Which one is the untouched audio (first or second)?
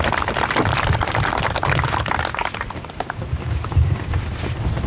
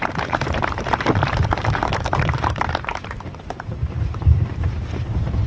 first